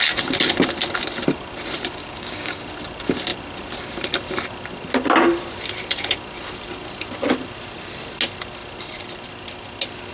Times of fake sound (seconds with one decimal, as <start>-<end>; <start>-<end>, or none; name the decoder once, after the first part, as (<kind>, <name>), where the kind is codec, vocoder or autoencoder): 2.0-2.6 (codec, DAC)